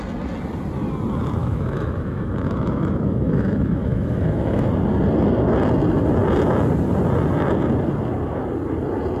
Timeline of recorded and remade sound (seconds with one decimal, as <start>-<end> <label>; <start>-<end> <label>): 0.0-1.4 recorded; 1.4-4.7 remade; 4.7-9.2 recorded